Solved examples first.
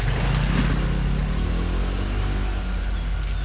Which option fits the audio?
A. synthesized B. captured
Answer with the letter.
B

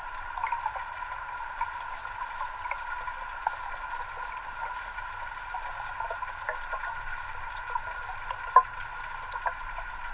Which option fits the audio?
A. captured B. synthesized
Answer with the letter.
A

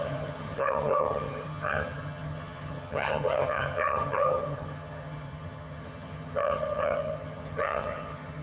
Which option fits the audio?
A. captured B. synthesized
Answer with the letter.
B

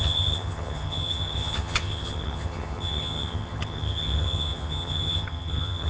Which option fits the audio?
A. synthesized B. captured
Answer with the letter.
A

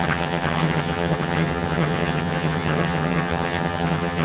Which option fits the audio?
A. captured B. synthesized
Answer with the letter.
B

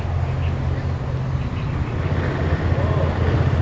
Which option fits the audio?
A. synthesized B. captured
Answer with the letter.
B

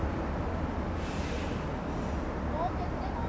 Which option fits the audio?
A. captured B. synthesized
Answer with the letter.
A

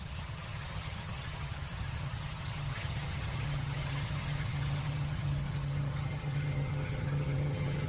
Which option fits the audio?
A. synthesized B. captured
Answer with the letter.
A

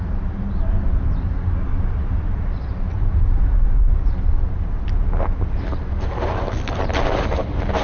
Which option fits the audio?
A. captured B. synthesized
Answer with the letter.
A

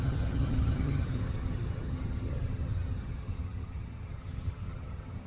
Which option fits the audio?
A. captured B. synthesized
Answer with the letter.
B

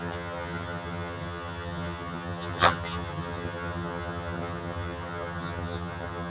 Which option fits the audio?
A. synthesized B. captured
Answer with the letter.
A